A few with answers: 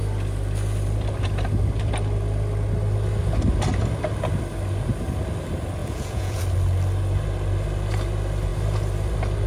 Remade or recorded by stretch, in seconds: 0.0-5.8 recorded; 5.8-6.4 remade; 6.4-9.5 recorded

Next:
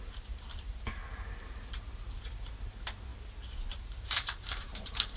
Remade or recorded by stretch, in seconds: 0.0-1.0 remade; 1.0-2.1 recorded; 2.1-3.1 remade; 3.1-3.7 recorded; 3.7-5.2 remade

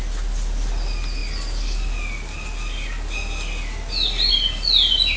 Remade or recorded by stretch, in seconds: 0.0-5.2 recorded

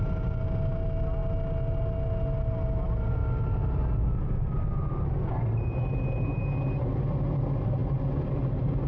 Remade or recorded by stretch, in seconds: 0.0-8.9 recorded

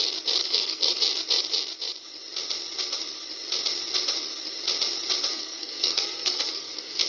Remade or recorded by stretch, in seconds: 0.0-0.4 recorded; 0.4-1.0 remade; 1.0-5.3 recorded; 5.3-7.1 remade